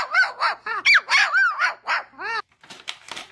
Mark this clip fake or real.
real